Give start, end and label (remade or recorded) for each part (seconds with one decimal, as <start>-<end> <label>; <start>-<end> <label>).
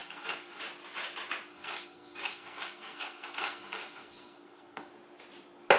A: 0.0-0.6 remade; 0.6-1.5 recorded; 1.5-4.9 remade; 4.9-5.8 recorded